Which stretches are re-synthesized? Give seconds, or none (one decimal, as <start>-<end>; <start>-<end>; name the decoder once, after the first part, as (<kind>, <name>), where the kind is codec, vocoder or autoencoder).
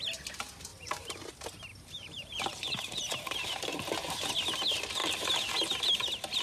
0.7-1.2 (vocoder, BigVGAN v2); 1.7-3.6; 5.0-5.6